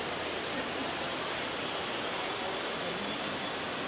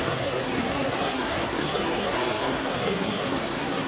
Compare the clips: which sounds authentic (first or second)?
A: first